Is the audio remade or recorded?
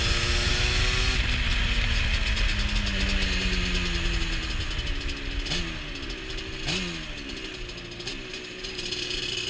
recorded